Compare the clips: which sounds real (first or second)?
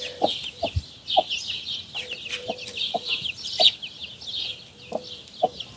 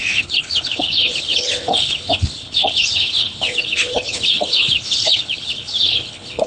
first